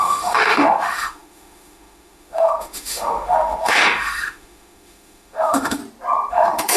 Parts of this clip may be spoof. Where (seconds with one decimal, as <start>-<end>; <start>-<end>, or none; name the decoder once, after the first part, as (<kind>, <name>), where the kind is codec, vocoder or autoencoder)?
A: 0.0-5.8 (autoencoder, DAC-VAE); 6.3-6.8